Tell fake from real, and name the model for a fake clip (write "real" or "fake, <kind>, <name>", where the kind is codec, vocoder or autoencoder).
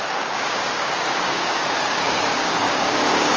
fake, codec, DAC